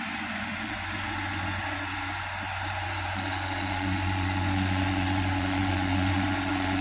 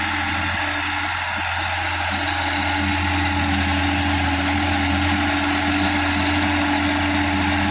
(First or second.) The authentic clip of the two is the second